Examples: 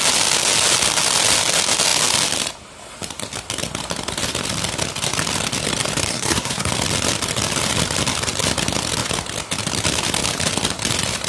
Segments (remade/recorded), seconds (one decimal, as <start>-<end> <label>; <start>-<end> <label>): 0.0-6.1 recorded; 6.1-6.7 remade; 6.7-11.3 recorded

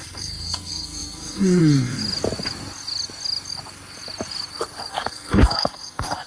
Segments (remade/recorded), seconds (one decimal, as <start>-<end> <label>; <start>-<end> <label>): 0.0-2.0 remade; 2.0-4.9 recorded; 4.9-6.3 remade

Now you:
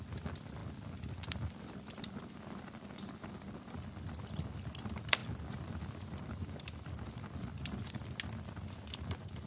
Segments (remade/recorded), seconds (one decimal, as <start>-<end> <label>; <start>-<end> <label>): 0.0-9.5 recorded